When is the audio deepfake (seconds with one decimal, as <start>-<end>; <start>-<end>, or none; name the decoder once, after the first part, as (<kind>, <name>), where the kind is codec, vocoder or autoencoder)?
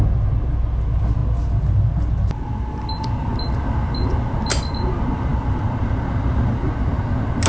none